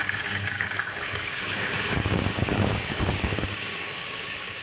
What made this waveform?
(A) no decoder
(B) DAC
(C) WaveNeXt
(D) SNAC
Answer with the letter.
B